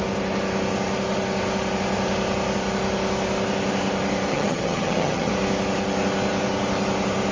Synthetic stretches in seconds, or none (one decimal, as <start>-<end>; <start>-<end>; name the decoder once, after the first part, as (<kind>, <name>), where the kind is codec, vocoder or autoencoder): 4.3-5.3 (vocoder, HiFi-GAN)